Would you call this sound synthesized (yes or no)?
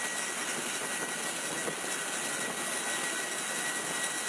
no